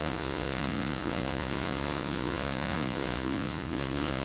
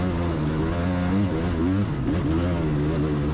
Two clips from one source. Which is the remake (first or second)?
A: first